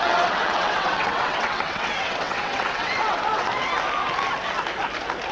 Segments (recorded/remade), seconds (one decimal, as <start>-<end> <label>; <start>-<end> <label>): 0.0-3.5 remade; 3.5-5.3 recorded